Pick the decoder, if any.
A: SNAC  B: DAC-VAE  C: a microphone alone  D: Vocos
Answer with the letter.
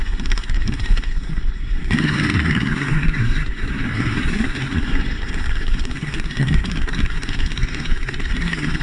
A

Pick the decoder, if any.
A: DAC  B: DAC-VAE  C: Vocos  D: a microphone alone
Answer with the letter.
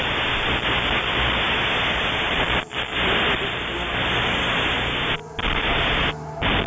D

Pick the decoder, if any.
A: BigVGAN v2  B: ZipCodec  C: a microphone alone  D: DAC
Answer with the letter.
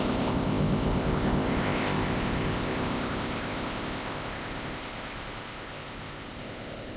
B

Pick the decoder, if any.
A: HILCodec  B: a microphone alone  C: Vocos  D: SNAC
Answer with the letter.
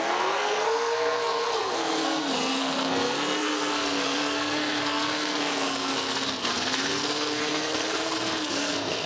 D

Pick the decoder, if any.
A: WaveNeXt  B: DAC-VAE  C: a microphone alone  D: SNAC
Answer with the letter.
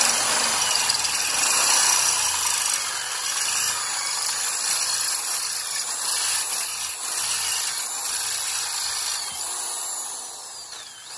C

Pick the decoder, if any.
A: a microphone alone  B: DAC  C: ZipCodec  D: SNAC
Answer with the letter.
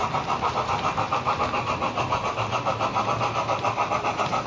A